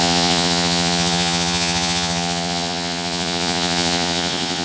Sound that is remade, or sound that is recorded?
remade